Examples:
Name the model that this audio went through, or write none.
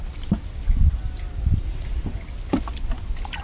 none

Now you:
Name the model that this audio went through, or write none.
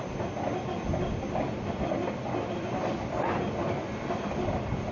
none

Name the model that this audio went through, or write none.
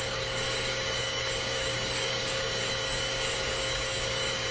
codec, DAC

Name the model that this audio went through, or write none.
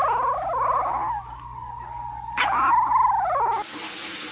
none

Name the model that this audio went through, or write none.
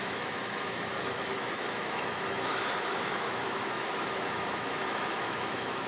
autoencoder, DAC-VAE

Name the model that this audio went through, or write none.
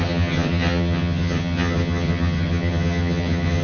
vocoder, HiFi-GAN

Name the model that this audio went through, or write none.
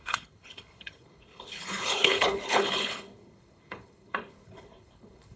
codec, HILCodec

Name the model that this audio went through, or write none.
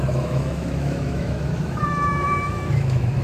autoencoder, DAC-VAE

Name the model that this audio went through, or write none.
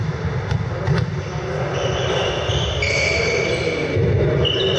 none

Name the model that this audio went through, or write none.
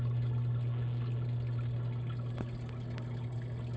none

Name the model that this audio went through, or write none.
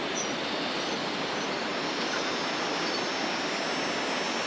none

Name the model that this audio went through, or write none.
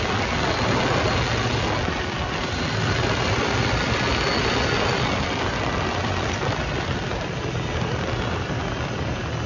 none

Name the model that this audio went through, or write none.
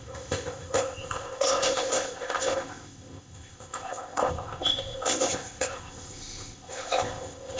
codec, ZipCodec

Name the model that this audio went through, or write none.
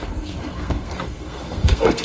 codec, SNAC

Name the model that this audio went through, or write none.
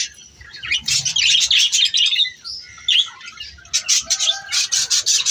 none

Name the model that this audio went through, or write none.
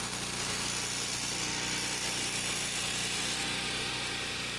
none